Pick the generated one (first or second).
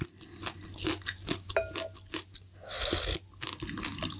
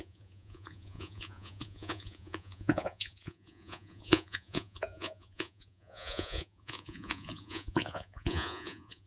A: second